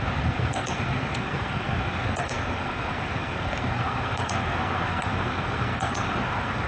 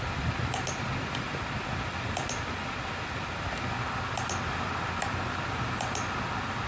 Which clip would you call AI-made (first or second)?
first